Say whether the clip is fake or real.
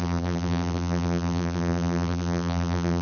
fake